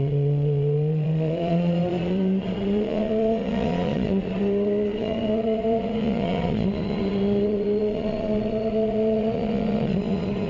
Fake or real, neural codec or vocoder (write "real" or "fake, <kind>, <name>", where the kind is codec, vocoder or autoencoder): fake, vocoder, Vocos